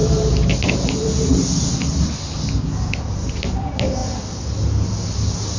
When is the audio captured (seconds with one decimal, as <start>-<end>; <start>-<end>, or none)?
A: 0.0-5.6